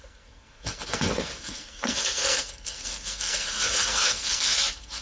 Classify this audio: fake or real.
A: fake